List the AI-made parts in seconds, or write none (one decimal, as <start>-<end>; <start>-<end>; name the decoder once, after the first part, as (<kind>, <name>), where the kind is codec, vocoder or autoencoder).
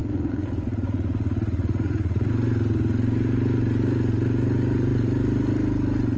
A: 0.0-2.3 (vocoder, Vocos)